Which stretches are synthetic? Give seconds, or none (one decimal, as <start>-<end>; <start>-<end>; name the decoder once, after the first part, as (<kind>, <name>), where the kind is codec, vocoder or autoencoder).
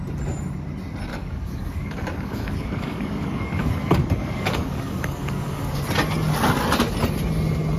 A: 1.1-5.8 (codec, DAC)